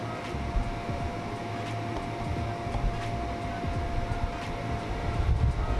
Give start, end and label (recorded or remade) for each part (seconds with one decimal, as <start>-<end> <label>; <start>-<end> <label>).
0.0-5.8 recorded